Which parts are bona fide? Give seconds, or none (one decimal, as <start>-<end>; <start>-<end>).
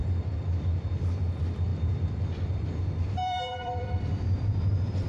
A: 1.2-1.7